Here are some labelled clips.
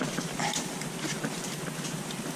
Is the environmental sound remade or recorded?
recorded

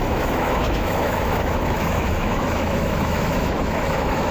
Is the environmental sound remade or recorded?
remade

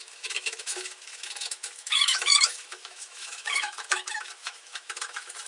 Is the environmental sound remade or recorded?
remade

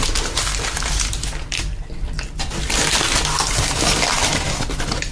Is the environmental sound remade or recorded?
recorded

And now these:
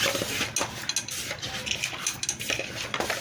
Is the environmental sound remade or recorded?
recorded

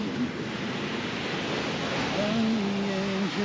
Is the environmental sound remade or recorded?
recorded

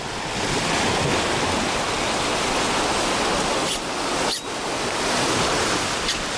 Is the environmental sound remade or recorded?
recorded